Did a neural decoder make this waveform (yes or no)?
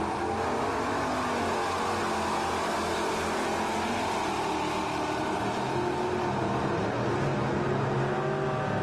no